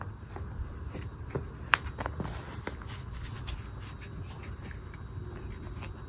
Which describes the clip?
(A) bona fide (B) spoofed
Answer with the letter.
A